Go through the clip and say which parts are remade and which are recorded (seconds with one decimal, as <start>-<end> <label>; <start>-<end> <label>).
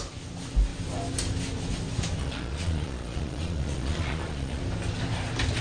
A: 0.0-2.2 recorded; 2.2-4.6 remade; 4.6-5.6 recorded